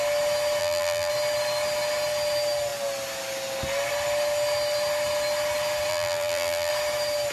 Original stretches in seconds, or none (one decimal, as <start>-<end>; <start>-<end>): 0.0-0.6; 1.1-5.9; 6.7-7.3